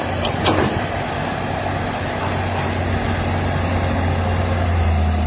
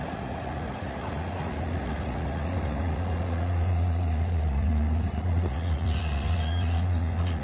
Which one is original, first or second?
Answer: first